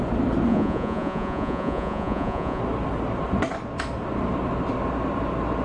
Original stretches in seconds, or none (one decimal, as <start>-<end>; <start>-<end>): 0.0-0.5; 2.6-5.6